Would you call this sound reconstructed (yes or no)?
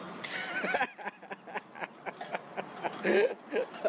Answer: no